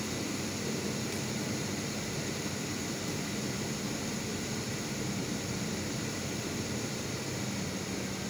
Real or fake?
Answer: fake